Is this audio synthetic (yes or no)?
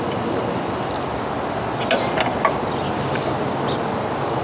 no